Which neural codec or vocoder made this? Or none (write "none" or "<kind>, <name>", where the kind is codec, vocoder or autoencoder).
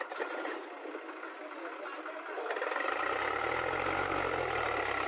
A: none